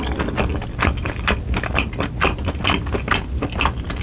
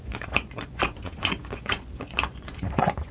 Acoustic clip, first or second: first